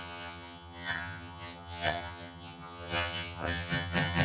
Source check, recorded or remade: remade